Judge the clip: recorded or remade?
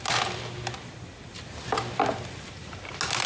recorded